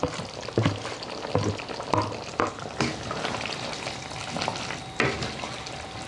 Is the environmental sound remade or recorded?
recorded